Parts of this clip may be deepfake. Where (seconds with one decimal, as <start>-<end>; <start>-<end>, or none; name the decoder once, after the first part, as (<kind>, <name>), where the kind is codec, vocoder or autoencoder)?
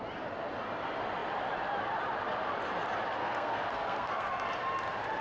3.2-4.3 (codec, SNAC)